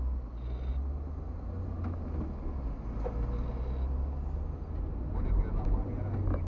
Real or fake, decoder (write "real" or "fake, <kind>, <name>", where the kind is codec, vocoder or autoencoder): real